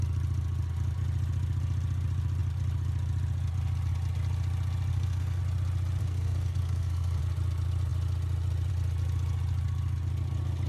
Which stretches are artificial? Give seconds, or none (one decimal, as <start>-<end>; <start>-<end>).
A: 4.9-5.4; 6.0-7.2